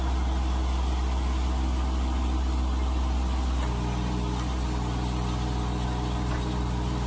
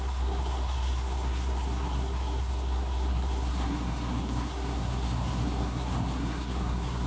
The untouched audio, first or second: first